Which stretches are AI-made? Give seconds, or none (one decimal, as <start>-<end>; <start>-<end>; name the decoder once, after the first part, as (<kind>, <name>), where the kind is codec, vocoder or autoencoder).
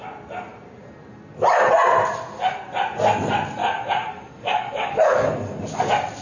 3.6-5.6 (codec, DAC)